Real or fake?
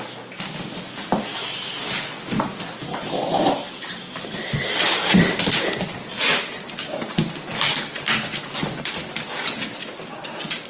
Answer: real